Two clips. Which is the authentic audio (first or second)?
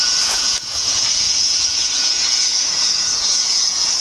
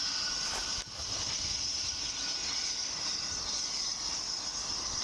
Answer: second